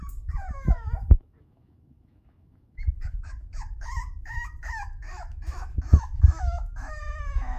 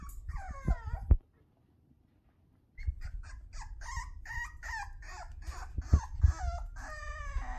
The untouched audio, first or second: second